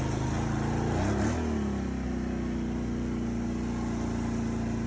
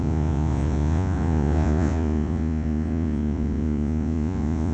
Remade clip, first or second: second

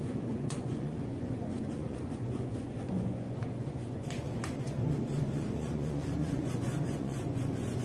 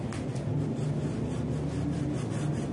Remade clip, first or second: first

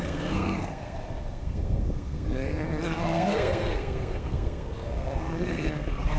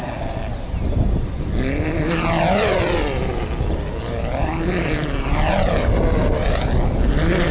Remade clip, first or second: first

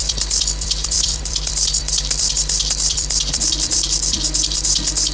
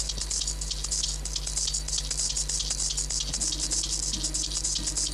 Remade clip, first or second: first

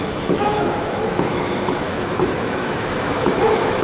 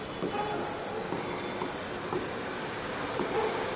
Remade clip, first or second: first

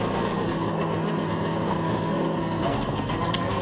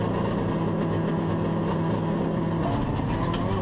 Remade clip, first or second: first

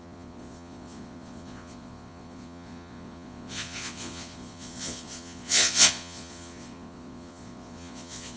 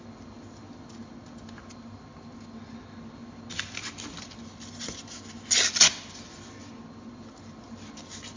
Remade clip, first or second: first